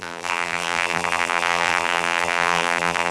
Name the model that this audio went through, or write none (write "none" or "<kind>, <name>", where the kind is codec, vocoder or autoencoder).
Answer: vocoder, BigVGAN v2